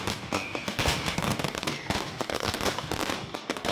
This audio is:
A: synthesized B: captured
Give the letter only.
A